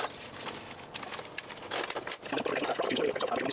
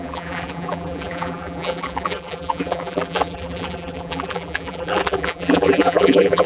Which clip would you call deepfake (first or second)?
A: second